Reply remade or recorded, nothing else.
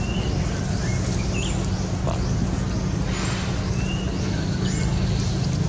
recorded